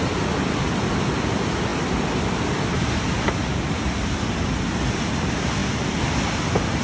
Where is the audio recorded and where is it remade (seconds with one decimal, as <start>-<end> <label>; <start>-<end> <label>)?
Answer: 0.0-1.7 recorded; 1.7-2.6 remade; 2.6-6.8 recorded